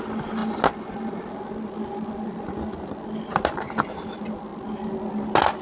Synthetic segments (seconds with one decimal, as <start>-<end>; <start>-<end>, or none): none